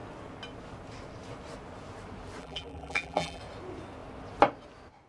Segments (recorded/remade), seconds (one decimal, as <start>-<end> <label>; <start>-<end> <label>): 0.0-2.4 recorded; 2.4-3.4 remade; 3.4-5.1 recorded

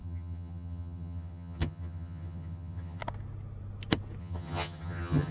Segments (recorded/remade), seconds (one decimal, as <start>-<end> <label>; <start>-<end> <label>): 0.0-3.0 remade; 3.0-4.2 recorded; 4.2-5.3 remade

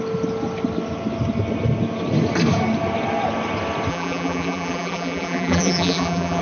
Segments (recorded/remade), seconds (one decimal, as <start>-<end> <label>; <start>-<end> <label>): 0.0-3.9 recorded; 3.9-6.4 remade

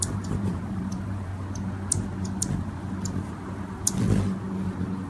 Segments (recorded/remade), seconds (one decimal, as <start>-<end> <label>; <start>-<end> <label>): 0.0-1.3 remade; 1.3-4.4 recorded; 4.4-5.1 remade

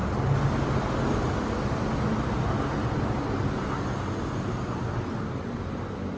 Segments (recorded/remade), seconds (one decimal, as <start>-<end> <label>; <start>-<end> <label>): 0.0-6.2 recorded